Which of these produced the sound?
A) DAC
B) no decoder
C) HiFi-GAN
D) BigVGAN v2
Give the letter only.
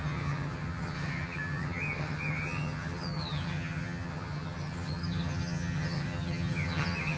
C